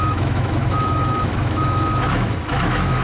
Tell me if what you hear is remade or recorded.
remade